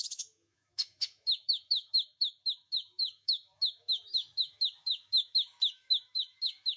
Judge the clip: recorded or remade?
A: remade